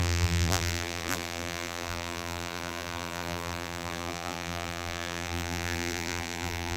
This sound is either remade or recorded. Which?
remade